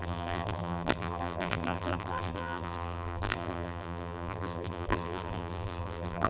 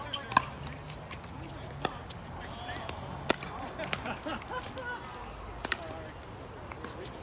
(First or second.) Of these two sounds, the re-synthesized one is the first